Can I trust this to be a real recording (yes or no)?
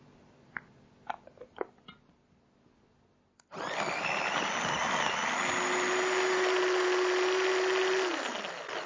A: yes